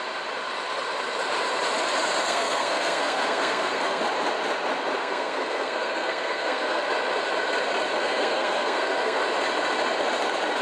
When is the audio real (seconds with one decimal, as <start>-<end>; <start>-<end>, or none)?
0.0-2.2; 4.0-5.0; 6.8-8.0; 9.2-10.6